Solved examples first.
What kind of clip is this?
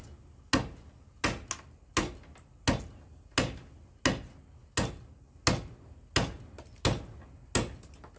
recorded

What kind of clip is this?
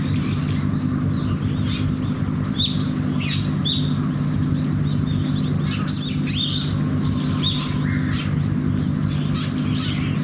recorded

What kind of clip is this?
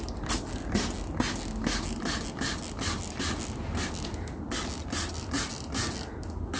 recorded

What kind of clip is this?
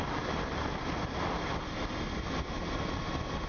recorded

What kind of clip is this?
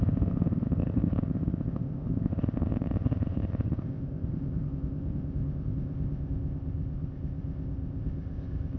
remade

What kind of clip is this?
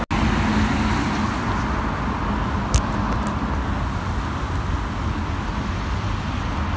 recorded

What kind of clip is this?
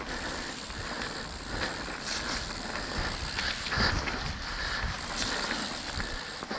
recorded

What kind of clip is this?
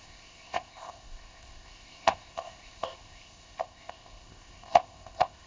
remade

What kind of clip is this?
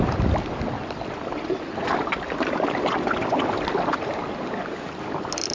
recorded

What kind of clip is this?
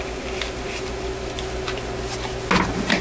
recorded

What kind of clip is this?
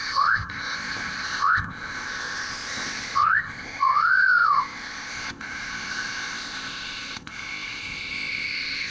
remade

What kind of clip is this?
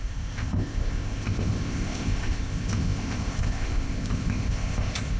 remade